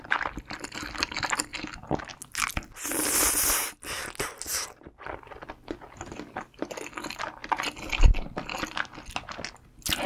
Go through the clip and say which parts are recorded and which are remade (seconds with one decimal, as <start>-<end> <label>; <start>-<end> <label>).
0.0-4.5 recorded; 4.5-5.3 remade; 5.3-10.1 recorded